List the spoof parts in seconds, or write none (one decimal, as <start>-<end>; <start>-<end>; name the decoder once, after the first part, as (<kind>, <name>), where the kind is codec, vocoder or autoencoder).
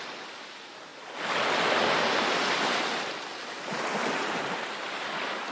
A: none